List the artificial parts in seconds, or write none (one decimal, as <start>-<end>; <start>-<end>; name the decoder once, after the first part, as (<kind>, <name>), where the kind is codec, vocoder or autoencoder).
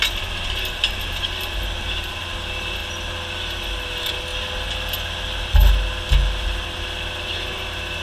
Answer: none